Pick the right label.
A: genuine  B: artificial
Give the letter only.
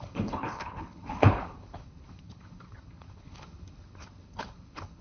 B